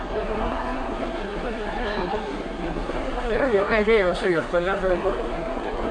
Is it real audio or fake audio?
fake